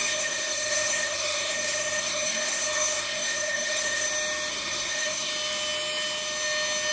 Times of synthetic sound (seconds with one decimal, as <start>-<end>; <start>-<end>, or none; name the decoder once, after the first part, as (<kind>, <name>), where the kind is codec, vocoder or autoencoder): 0.0-4.1 (codec, SNAC); 4.5-5.3